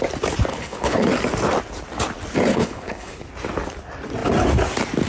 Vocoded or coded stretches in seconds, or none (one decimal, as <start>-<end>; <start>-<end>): 0.5-1.1; 2.5-3.3